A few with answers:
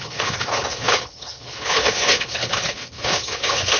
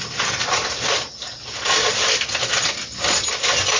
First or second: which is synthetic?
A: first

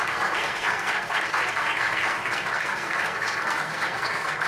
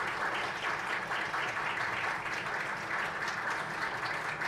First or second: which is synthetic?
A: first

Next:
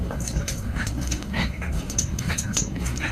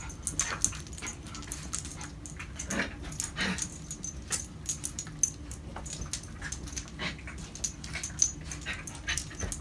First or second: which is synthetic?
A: first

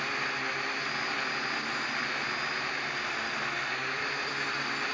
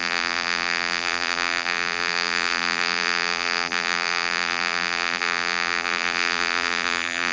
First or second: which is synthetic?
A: second